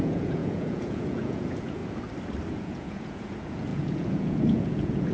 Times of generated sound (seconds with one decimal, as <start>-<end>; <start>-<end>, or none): 0.0-1.8; 2.5-5.1